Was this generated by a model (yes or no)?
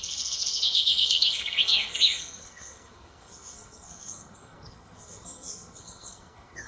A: yes